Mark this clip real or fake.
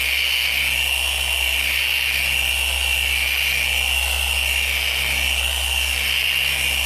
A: real